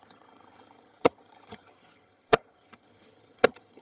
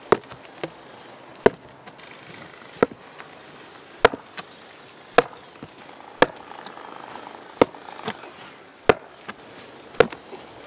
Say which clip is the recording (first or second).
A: second